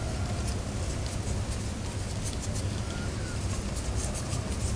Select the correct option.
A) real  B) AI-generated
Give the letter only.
A